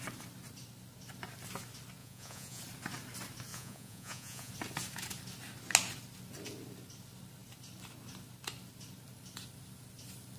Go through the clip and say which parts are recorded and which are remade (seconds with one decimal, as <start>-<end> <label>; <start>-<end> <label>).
0.0-2.0 recorded; 2.0-2.6 remade; 2.6-3.5 recorded; 3.5-4.5 remade; 4.5-10.4 recorded